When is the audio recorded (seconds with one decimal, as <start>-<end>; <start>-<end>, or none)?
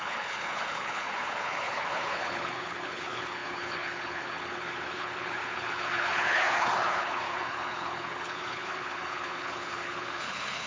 none